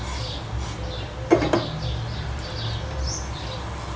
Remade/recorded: recorded